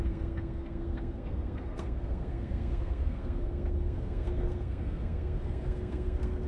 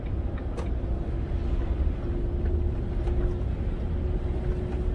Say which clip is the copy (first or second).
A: first